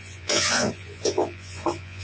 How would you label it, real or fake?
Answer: fake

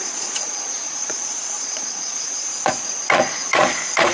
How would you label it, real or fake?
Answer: fake